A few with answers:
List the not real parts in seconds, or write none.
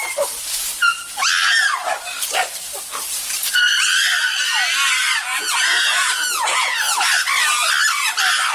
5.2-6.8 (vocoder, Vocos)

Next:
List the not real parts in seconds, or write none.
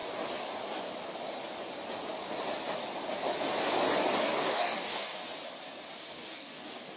4.2-5.2 (codec, DAC); 6.0-7.0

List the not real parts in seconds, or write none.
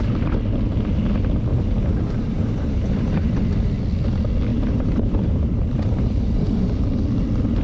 1.5-3.4 (vocoder, BigVGAN v2); 4.5-6.7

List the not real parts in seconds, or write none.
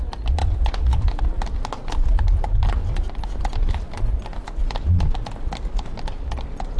0.4-1.2 (vocoder, Vocos)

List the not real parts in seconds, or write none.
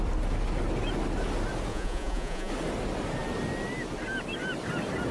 1.7-2.5 (vocoder, Vocos)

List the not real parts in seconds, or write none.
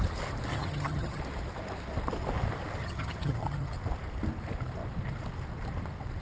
0.5-1.2 (vocoder, HiFi-GAN); 2.8-3.7